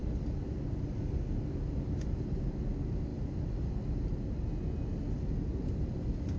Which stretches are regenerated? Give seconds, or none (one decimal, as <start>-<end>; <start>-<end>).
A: none